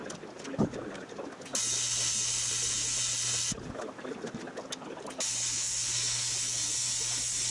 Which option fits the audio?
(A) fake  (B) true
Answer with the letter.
B